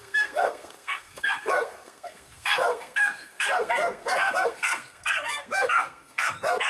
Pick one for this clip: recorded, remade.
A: remade